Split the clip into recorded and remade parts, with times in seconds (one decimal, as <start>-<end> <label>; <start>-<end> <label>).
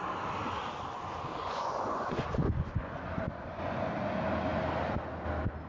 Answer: 0.0-1.4 recorded; 1.4-3.9 remade; 3.9-5.7 recorded